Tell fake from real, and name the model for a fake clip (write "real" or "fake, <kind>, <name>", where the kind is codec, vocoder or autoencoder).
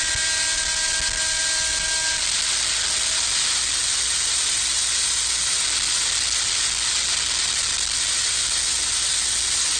real